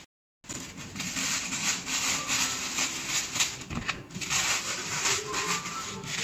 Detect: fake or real real